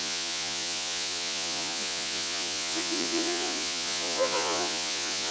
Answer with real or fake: fake